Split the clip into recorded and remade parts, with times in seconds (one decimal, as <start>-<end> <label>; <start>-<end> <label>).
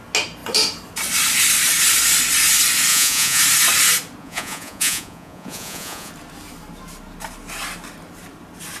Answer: 0.0-2.9 recorded; 2.9-3.4 remade; 3.4-4.2 recorded; 4.2-6.1 remade; 6.1-8.8 recorded